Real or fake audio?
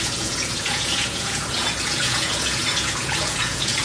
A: fake